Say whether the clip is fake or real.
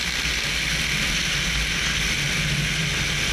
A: real